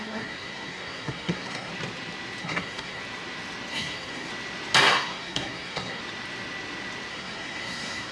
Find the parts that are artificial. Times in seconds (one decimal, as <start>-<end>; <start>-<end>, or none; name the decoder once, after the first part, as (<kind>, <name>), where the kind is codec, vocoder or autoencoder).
0.0-1.7 (codec, SNAC); 2.4-3.0; 3.7-4.3; 4.8-6.0; 7.1-8.1